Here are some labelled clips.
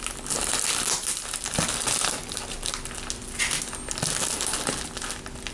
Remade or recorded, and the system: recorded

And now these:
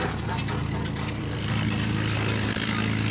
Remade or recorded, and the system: recorded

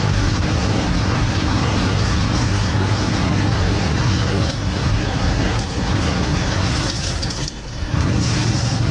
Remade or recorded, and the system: remade, codec, SNAC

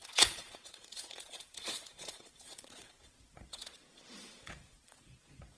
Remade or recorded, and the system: remade, vocoder, Vocos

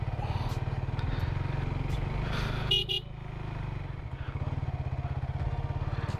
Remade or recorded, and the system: recorded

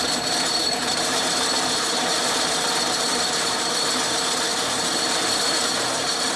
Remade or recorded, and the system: remade, vocoder, BigVGAN v2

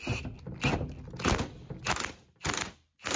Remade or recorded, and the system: recorded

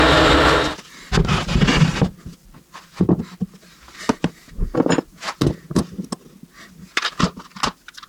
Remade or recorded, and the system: recorded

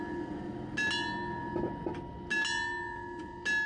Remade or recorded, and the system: recorded